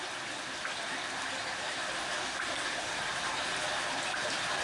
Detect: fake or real real